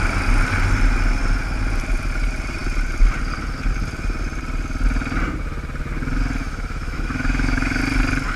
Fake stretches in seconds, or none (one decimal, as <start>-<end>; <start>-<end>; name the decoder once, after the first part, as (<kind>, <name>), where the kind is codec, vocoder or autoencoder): 6.4-7.8 (autoencoder, DAC-VAE)